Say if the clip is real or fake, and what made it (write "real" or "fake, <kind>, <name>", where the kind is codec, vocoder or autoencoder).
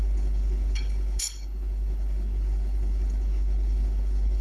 fake, codec, HILCodec